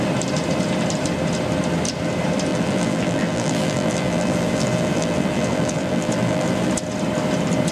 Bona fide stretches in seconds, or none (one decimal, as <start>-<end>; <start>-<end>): 0.0-2.5; 6.7-7.7